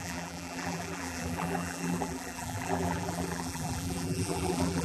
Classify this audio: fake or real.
fake